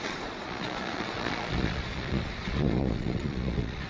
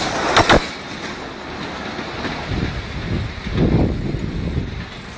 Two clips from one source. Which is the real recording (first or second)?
second